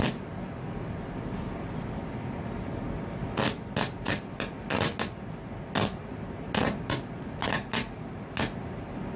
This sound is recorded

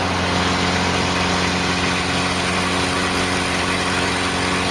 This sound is recorded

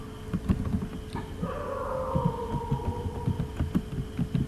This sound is recorded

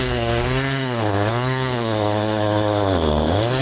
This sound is remade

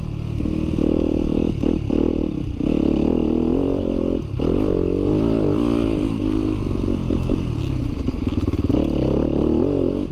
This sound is recorded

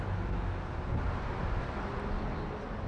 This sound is recorded